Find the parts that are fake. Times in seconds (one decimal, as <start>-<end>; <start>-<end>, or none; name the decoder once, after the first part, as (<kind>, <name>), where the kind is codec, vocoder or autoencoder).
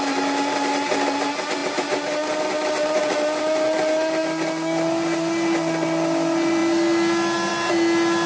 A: none